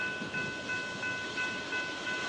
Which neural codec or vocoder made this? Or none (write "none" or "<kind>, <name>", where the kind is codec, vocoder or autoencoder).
none